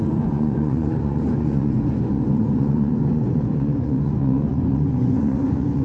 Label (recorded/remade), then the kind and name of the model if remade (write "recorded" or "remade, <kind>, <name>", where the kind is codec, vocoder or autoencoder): remade, vocoder, Vocos